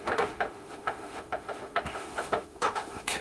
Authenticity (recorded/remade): remade